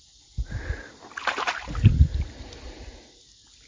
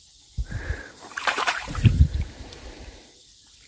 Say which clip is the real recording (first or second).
first